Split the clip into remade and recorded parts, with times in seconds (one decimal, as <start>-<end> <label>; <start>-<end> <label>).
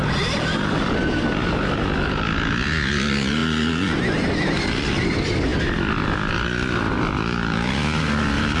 0.0-8.6 recorded